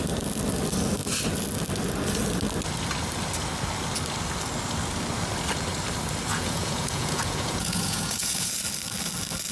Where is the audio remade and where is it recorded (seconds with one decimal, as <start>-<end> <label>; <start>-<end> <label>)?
0.0-6.3 recorded; 6.3-8.5 remade; 8.5-9.5 recorded